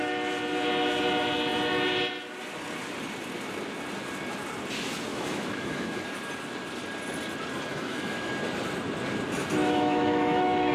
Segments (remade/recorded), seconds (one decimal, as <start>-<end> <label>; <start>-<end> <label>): 0.0-5.1 recorded; 5.1-6.0 remade; 6.0-7.7 recorded; 7.7-8.3 remade; 8.3-9.6 recorded; 9.6-10.7 remade